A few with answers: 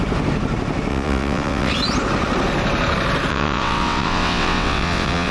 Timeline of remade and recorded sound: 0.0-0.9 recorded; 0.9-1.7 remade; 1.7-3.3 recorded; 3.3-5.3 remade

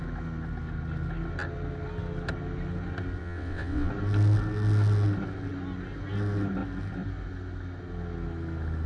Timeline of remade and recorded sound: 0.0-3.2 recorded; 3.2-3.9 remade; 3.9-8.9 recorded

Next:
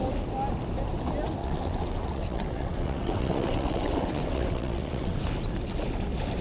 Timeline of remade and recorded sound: 0.0-1.4 recorded; 1.4-5.2 remade; 5.2-6.4 recorded

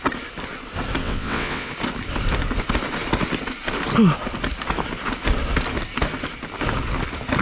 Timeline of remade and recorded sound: 0.0-1.0 recorded; 1.0-1.7 remade; 1.7-7.4 recorded

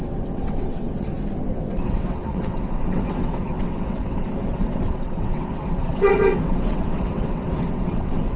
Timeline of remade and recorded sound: 0.0-1.1 remade; 1.1-1.7 recorded; 1.7-8.4 remade

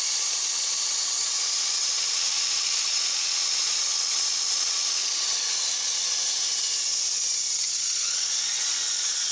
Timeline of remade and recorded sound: 0.0-9.3 remade

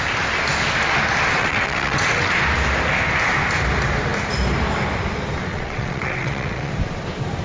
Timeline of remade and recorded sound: 0.0-1.4 recorded; 1.4-2.3 remade; 2.3-5.5 recorded; 5.5-6.7 remade; 6.7-7.4 recorded